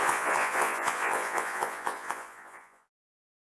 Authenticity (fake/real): fake